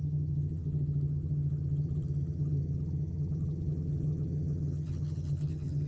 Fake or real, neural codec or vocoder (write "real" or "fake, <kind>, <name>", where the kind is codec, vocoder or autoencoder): fake, vocoder, HiFi-GAN